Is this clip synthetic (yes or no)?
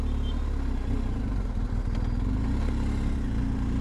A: no